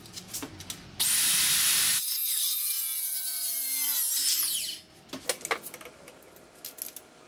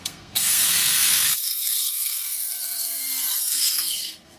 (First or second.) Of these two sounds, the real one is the first